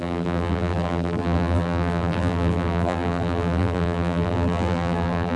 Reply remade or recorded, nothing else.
remade